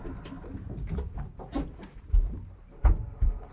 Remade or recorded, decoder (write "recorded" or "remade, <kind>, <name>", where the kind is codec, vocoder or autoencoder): recorded